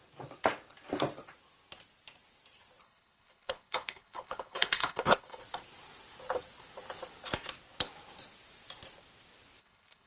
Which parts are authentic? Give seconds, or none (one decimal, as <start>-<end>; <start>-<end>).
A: 0.0-2.8; 5.4-9.6